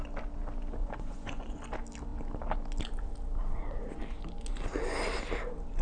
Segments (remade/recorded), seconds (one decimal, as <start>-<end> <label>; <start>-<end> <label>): 0.0-0.8 recorded; 0.8-1.6 remade; 1.6-5.8 recorded